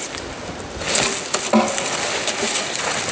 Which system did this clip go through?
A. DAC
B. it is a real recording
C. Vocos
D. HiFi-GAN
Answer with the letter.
B